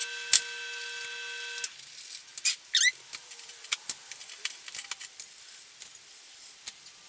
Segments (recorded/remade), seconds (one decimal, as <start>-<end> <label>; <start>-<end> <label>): 0.0-7.1 recorded